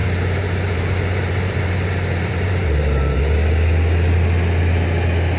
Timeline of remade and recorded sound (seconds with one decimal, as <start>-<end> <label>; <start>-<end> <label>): 0.0-3.2 remade; 3.2-5.4 recorded

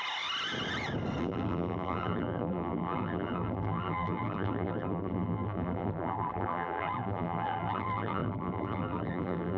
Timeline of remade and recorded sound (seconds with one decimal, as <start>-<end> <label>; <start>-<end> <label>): 0.0-1.2 recorded; 1.2-9.6 remade

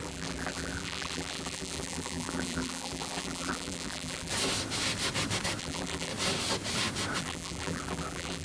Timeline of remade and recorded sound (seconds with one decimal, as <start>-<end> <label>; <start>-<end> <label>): 0.0-4.3 remade; 4.3-5.6 recorded; 5.6-6.1 remade; 6.1-7.2 recorded; 7.2-8.4 remade

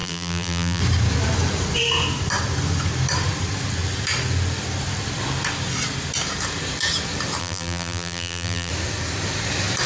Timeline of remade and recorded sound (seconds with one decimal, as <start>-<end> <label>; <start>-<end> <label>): 0.0-0.8 remade; 0.8-7.4 recorded; 7.4-8.7 remade; 8.7-9.9 recorded

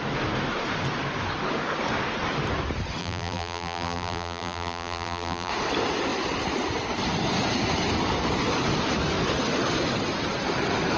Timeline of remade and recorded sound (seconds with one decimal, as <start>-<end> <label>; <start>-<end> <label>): 0.0-3.0 recorded; 3.0-5.5 remade; 5.5-11.0 recorded

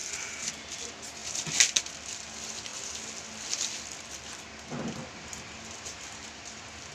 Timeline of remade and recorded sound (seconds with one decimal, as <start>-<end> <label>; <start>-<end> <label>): 0.0-0.5 remade; 0.5-6.9 recorded